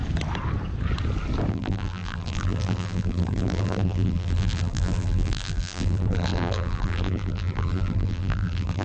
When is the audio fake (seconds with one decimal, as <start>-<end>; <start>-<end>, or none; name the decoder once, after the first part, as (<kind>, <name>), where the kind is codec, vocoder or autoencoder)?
1.5-8.8 (vocoder, BigVGAN v2)